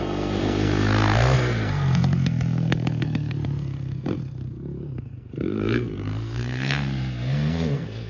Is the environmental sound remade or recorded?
remade